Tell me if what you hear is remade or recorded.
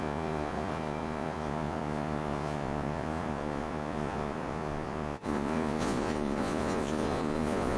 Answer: remade